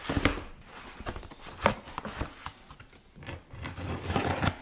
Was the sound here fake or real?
real